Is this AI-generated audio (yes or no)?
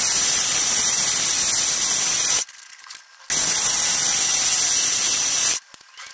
no